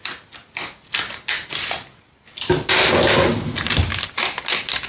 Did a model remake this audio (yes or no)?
no